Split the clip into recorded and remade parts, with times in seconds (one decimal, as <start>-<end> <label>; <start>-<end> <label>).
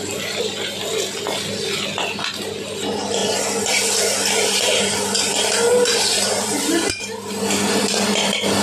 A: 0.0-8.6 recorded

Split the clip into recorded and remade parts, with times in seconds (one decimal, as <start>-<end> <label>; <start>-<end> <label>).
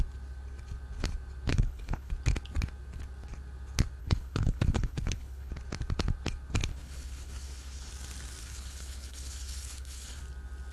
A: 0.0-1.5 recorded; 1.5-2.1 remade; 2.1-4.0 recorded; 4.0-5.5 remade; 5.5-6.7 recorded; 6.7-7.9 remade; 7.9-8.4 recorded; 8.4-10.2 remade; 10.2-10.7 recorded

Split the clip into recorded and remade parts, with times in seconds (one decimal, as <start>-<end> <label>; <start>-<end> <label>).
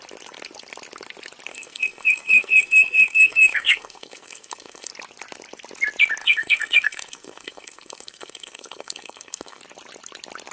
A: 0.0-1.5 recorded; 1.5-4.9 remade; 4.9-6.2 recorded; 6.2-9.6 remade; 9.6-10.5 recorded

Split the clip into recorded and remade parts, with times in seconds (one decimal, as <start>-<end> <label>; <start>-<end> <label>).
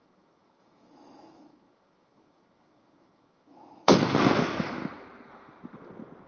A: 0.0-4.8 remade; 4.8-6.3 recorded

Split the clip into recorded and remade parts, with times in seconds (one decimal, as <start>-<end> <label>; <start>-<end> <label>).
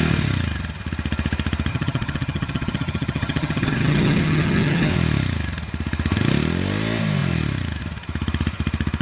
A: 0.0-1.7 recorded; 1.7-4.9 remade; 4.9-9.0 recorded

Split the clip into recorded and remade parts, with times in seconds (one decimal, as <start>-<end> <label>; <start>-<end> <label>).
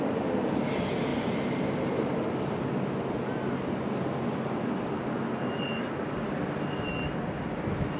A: 0.0-8.0 recorded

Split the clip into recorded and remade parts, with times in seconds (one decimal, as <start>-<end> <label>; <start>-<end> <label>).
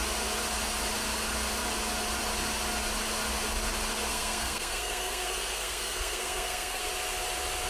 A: 0.0-4.1 recorded; 4.1-6.8 remade; 6.8-7.7 recorded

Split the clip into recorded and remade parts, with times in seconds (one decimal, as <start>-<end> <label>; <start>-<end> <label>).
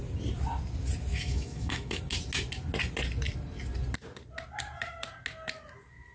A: 0.0-1.1 recorded; 1.1-2.0 remade; 2.0-6.1 recorded